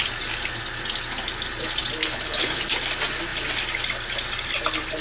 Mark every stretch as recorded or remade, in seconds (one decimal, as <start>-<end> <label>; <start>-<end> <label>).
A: 0.0-2.0 recorded; 2.0-2.6 remade; 2.6-5.0 recorded